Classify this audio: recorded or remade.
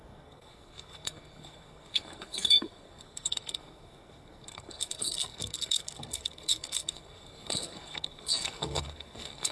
remade